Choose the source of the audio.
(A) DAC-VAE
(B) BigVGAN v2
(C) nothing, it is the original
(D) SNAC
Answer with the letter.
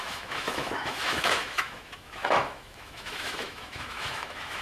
A